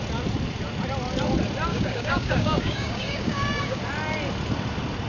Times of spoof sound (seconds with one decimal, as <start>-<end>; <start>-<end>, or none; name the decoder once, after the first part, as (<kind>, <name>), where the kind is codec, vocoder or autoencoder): 1.7-3.8 (codec, DAC)